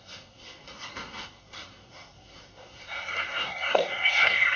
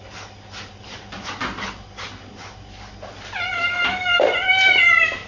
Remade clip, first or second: first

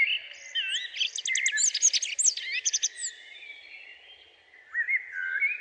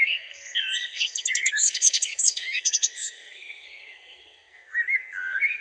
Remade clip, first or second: second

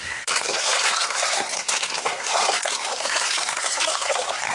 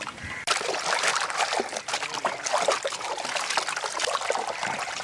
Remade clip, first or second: first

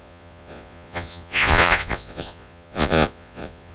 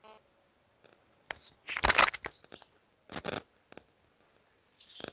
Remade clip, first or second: first